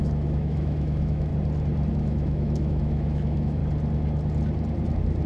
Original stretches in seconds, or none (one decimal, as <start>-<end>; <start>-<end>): 1.3-1.9; 3.6-5.3

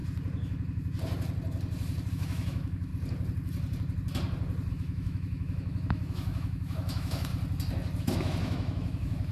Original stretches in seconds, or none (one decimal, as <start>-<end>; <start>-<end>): 0.0-2.1; 2.9-4.7; 7.3-8.0

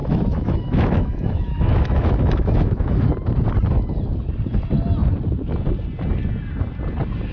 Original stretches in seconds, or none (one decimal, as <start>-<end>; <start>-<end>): 3.0-7.3

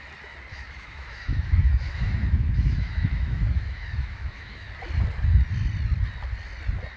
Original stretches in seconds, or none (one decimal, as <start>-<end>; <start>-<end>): 0.0-0.5; 4.7-7.0

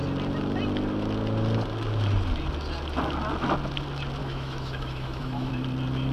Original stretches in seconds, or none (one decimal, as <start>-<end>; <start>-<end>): 0.0-4.2; 5.5-6.1